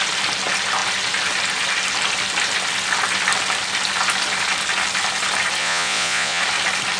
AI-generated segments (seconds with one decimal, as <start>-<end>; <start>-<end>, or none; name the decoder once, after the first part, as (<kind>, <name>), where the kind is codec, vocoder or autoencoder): 5.6-6.4 (vocoder, Vocos)